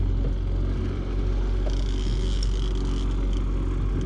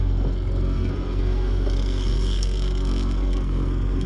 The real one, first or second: first